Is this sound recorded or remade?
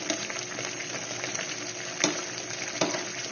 recorded